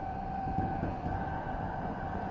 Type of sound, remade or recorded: remade